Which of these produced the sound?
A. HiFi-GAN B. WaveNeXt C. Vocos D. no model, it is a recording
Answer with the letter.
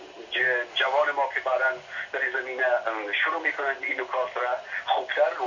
D